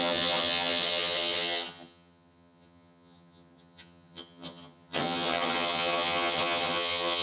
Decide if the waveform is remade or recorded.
remade